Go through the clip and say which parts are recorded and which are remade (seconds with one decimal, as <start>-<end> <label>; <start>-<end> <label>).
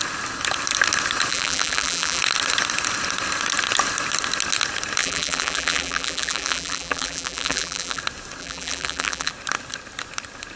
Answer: 0.0-1.3 recorded; 1.3-2.2 remade; 2.2-5.0 recorded; 5.0-8.0 remade; 8.0-8.4 recorded; 8.4-9.3 remade; 9.3-10.6 recorded